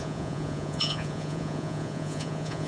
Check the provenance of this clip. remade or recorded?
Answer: remade